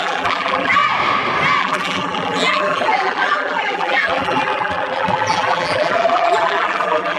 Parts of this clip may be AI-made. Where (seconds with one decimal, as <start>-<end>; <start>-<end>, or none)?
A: 0.0-0.8; 1.6-7.2